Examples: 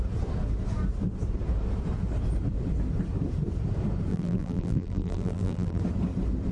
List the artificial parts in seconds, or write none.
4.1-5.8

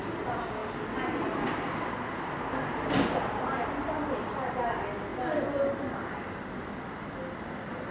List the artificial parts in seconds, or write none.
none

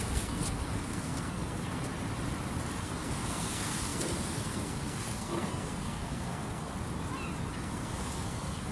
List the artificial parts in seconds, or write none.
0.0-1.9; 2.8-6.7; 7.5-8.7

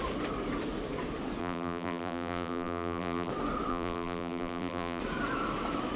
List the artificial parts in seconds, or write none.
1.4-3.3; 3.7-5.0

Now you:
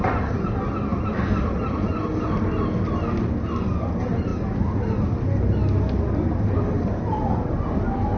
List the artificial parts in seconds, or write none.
none

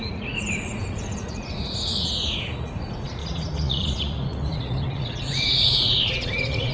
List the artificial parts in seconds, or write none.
0.0-6.7